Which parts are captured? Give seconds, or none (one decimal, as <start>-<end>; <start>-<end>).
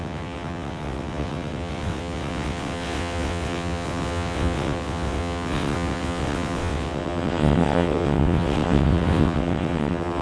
none